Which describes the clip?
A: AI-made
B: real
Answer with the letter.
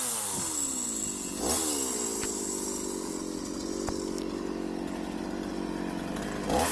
B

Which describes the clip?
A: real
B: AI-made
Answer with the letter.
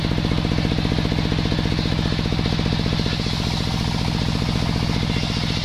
A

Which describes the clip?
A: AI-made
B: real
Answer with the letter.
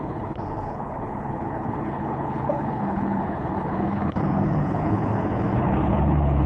A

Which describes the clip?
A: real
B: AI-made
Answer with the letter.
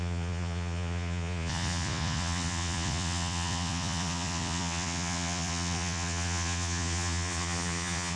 B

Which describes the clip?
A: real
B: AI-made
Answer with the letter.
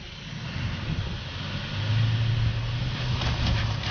A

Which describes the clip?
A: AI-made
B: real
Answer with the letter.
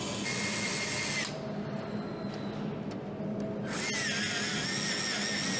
B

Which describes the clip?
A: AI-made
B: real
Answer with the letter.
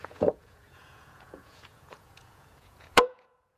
A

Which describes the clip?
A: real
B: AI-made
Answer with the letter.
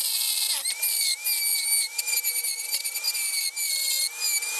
A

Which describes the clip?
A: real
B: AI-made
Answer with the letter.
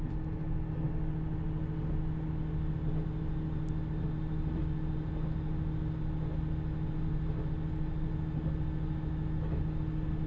A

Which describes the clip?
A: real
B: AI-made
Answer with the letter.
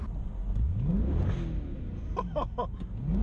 A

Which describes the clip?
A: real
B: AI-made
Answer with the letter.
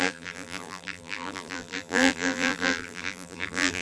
B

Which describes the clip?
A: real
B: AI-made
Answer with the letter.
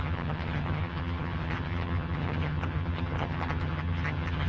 B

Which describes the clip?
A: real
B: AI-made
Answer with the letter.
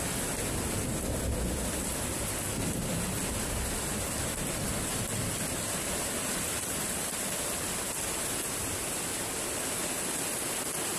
A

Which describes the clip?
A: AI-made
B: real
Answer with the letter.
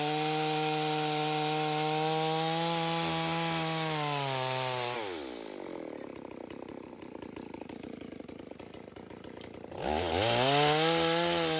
B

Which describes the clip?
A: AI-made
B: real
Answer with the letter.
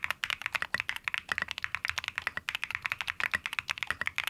B